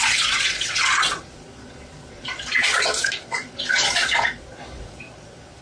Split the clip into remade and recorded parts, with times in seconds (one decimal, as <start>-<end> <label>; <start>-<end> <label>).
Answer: 0.0-5.6 remade